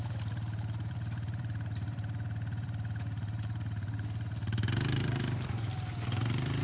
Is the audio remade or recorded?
remade